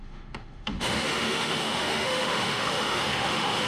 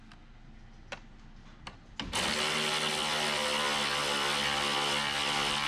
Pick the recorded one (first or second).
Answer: second